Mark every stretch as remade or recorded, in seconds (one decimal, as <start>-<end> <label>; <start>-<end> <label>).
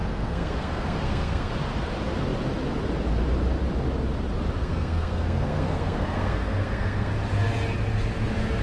0.0-1.5 remade; 1.5-4.6 recorded; 4.6-7.1 remade; 7.1-8.6 recorded